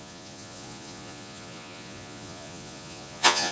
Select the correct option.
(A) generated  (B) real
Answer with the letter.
A